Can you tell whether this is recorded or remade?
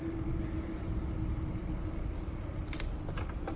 recorded